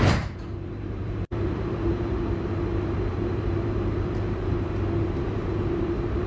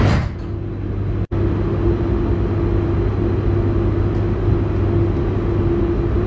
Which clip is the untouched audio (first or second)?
second